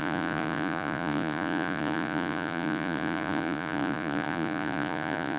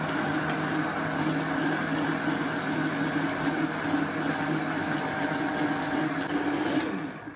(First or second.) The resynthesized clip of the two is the first